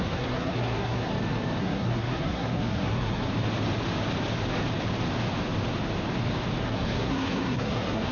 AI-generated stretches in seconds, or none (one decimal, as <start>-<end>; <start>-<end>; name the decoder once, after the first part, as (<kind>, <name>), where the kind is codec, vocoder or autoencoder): 0.0-1.1 (codec, SNAC); 1.6-3.3; 6.6-8.1